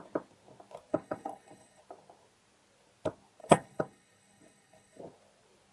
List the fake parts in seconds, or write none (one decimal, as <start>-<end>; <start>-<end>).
0.9-1.8; 3.4-5.0